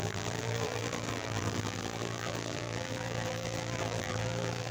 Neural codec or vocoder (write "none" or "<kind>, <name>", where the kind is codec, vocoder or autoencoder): vocoder, BigVGAN v2